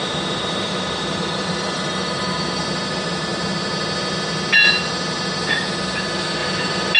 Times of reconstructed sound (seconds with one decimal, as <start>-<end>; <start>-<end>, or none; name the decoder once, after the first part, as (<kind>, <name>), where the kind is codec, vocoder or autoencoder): 0.0-2.6 (vocoder, BigVGAN v2); 6.4-7.0